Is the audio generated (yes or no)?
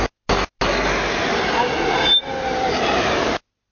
no